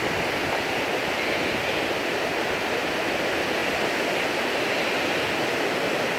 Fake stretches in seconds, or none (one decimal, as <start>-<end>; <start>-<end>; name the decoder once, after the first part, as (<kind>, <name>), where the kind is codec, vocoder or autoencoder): none